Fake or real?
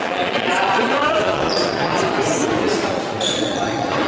fake